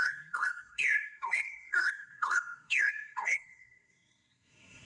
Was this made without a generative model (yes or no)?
no